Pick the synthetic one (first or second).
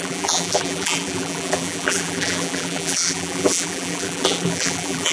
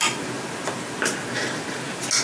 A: first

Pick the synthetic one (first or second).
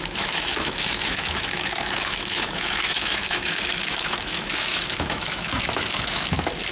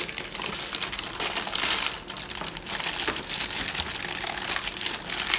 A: first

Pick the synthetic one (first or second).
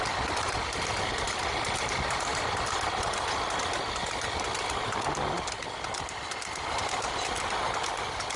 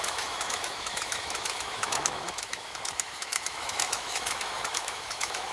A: second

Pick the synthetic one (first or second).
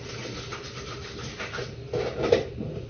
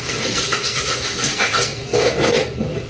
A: second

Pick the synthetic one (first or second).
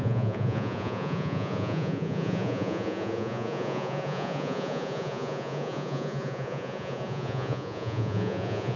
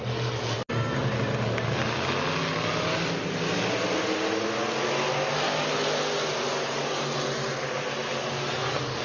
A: first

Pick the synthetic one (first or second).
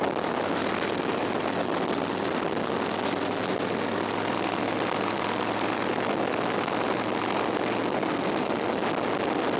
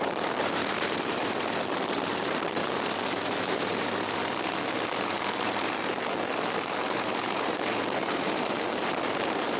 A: second